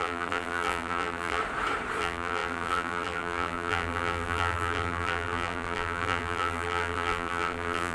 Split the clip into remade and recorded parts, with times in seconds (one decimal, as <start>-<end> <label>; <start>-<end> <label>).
0.0-1.4 remade; 1.4-2.0 recorded; 2.0-7.9 remade

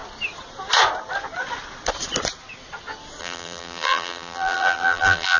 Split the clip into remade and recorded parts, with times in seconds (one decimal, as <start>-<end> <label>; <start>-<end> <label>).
0.0-3.2 recorded; 3.2-5.4 remade

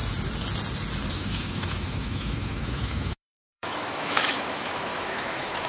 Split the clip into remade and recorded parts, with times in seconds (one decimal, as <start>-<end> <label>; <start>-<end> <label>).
0.0-1.1 recorded; 1.1-5.7 remade

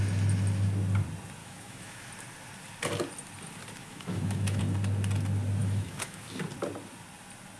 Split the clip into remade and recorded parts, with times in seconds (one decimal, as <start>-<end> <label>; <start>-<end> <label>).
0.0-1.4 recorded; 1.4-2.1 remade; 2.1-3.8 recorded; 3.8-4.6 remade; 4.6-5.6 recorded; 5.6-6.2 remade; 6.2-7.6 recorded